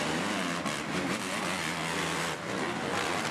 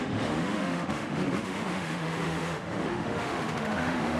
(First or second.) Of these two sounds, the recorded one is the first